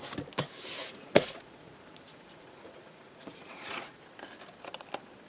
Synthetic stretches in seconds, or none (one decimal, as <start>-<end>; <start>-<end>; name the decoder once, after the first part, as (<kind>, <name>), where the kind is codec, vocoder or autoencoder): 0.8-4.0 (vocoder, Vocos)